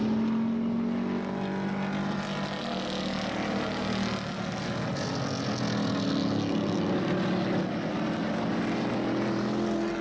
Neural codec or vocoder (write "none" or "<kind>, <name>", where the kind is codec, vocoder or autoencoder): none